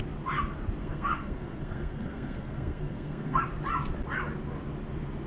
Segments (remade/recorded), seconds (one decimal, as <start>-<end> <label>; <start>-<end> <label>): 0.0-0.8 recorded; 0.8-3.4 remade; 3.4-5.3 recorded